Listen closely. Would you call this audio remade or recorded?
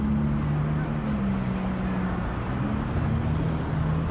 recorded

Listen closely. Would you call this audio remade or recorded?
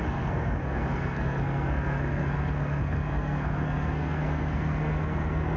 remade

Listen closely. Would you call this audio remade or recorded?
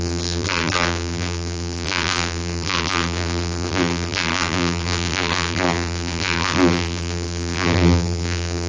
remade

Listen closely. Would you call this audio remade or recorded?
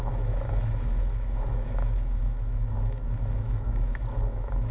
remade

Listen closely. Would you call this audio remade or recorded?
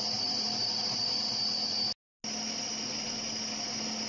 recorded